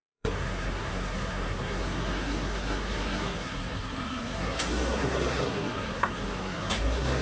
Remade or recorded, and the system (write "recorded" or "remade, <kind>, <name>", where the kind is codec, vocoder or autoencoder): remade, codec, SNAC